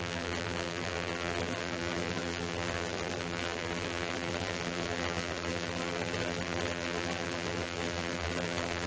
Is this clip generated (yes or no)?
yes